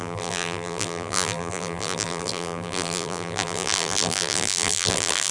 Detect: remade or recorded remade